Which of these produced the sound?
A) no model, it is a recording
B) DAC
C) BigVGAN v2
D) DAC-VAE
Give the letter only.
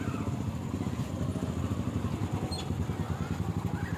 A